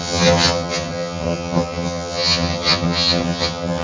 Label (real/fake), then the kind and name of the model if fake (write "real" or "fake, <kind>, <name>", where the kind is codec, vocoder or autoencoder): fake, vocoder, HiFi-GAN